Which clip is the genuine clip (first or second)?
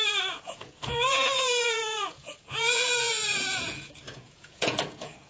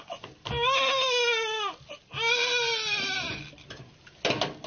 second